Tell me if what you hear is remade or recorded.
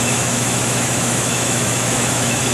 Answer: remade